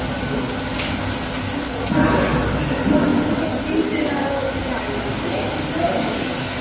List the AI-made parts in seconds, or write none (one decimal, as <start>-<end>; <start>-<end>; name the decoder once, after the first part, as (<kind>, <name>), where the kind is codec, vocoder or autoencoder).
none